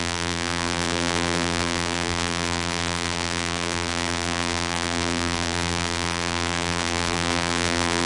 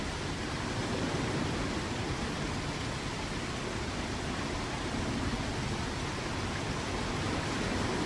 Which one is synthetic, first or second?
first